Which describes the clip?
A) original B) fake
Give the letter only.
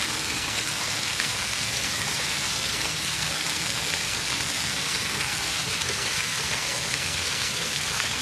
B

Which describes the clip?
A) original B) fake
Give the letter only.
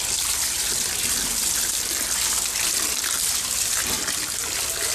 A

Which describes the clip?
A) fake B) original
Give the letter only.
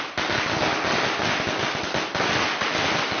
B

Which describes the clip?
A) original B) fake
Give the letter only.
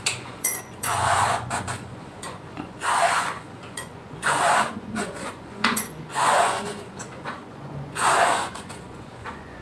B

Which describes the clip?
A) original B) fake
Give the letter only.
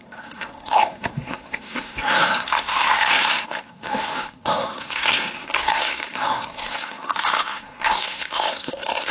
B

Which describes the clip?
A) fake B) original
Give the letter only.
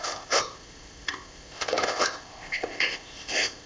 A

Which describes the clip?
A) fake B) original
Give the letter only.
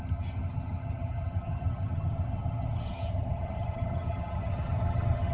A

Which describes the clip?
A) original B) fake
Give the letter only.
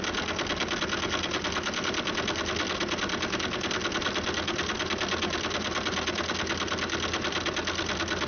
A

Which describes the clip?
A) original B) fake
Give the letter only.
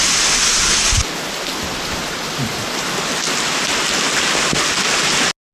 A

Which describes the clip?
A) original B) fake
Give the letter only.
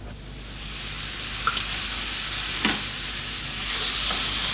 A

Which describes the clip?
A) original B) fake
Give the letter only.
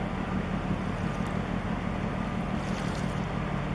A